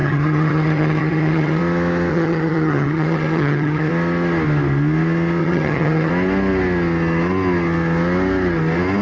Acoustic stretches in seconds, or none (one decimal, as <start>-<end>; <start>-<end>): 1.6-2.1; 3.9-5.4; 6.1-9.0